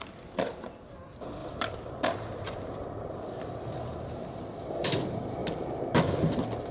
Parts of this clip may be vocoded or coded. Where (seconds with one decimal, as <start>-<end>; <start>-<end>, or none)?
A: 1.4-4.8; 5.4-5.9